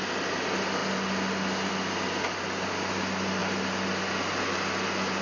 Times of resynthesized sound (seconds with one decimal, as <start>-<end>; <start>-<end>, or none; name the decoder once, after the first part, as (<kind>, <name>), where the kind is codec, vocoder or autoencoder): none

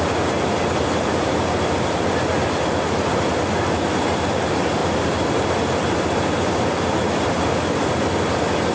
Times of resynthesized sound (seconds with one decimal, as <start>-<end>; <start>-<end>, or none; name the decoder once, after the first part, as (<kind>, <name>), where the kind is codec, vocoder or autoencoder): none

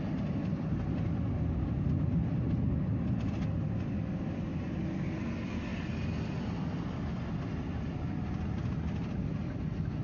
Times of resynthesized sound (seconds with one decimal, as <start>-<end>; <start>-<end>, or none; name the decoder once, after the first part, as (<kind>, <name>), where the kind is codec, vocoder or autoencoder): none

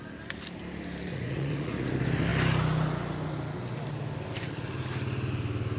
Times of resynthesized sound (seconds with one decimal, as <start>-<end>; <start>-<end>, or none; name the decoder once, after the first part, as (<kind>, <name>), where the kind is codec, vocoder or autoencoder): 1.1-1.9 (vocoder, Vocos)